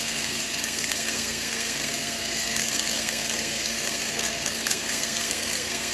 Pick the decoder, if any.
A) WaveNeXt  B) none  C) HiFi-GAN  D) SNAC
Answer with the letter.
D